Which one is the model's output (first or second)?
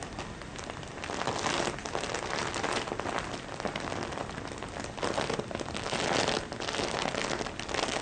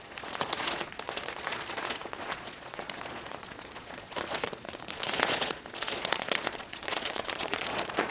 second